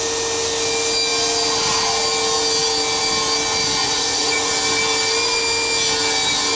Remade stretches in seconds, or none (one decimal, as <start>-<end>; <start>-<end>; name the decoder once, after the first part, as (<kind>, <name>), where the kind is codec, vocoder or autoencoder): 3.8-4.5 (vocoder, Vocos)

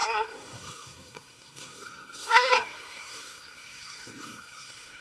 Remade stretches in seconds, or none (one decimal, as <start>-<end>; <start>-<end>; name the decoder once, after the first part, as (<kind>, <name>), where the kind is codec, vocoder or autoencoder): 0.0-5.0 (codec, SNAC)

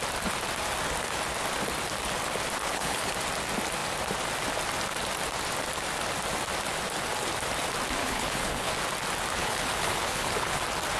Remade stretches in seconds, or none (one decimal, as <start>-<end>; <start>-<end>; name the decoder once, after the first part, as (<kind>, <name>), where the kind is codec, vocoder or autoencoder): 2.6-3.1 (codec, HILCodec); 8.0-8.7; 9.4-10.6

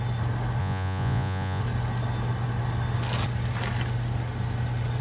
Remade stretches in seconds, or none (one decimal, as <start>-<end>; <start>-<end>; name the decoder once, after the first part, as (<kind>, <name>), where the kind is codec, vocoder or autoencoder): 0.6-1.6 (vocoder, Vocos)

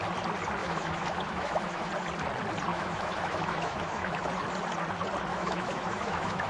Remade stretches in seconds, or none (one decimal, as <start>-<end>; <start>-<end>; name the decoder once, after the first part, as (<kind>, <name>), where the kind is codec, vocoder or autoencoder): 0.6-1.9 (autoencoder, DAC-VAE); 2.7-4.3; 5.3-6.5

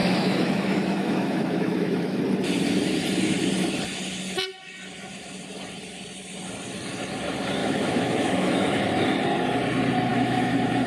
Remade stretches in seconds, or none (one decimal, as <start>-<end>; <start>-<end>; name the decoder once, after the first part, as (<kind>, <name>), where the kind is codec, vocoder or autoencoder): 0.0-2.2 (autoencoder, DAC-VAE); 7.6-8.8; 10.1-10.9

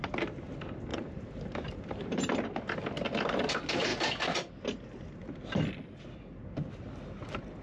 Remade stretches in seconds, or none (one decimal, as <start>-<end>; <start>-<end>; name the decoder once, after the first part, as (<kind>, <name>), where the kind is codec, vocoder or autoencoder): 0.9-2.2 (vocoder, BigVGAN v2)

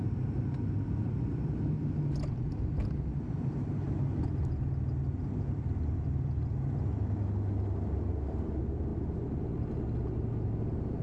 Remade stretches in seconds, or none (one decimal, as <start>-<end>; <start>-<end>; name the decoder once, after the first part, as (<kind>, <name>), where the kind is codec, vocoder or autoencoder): none